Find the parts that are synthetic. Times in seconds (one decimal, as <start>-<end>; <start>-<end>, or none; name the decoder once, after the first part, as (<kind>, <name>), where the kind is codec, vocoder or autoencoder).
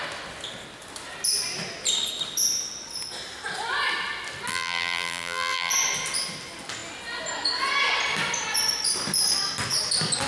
4.5-5.7 (vocoder, BigVGAN v2)